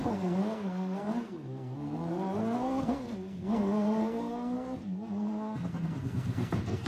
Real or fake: fake